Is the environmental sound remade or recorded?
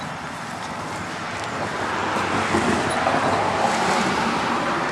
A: recorded